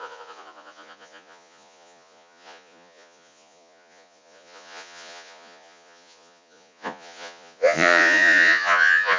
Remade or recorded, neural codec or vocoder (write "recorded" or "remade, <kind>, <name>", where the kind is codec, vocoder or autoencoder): remade, vocoder, Vocos